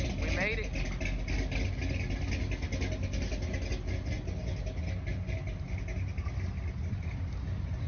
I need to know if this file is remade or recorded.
recorded